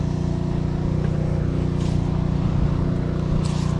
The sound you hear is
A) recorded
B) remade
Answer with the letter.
A